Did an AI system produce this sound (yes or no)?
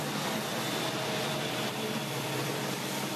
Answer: yes